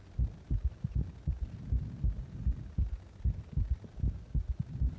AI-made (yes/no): no